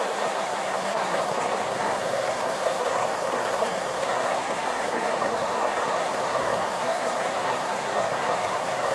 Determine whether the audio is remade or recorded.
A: remade